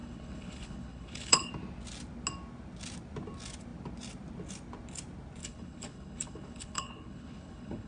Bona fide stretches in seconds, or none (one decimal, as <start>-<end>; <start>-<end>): 1.5-5.4